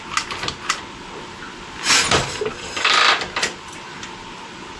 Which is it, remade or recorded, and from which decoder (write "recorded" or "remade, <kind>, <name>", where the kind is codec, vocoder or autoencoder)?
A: recorded